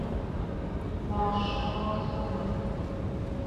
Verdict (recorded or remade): recorded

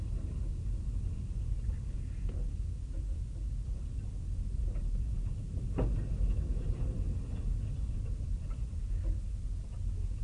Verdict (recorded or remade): recorded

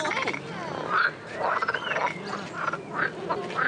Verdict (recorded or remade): recorded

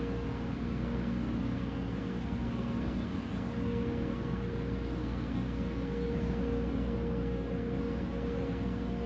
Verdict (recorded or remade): remade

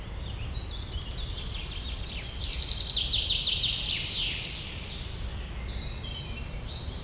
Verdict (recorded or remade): recorded